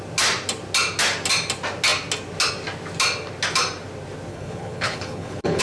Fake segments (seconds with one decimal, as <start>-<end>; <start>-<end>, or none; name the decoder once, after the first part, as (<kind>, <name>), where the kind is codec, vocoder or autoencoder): 4.3-5.6 (codec, HILCodec)